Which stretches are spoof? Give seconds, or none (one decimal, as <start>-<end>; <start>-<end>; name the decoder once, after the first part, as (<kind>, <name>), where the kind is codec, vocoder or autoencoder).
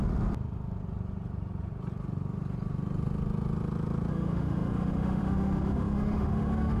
4.1-6.8 (autoencoder, DAC-VAE)